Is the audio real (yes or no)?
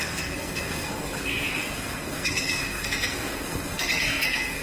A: no